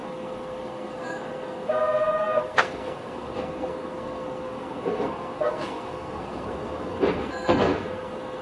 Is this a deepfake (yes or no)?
yes